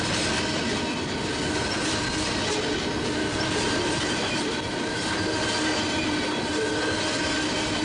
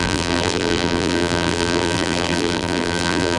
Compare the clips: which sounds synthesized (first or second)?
second